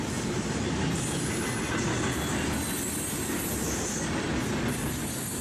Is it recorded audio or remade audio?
recorded